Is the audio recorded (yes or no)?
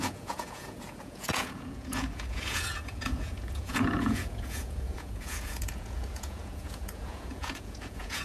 no